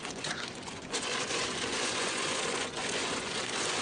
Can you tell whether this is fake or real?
fake